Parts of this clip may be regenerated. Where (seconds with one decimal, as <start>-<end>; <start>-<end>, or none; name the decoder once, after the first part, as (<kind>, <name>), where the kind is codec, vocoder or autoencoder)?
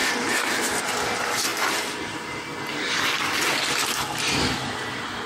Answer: 2.7-3.4 (codec, DAC)